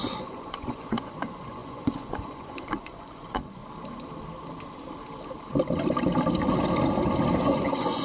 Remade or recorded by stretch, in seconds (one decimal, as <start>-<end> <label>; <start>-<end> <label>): 0.0-3.6 remade; 3.6-7.4 recorded; 7.4-8.0 remade